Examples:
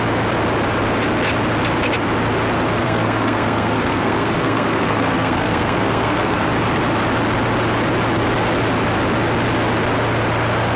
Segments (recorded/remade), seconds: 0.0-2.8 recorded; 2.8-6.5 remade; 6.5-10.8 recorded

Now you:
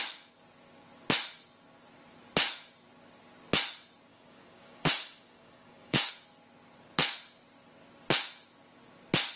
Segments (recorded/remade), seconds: 0.0-4.1 recorded; 4.1-6.1 remade; 6.1-9.4 recorded